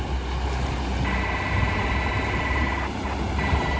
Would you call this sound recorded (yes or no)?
yes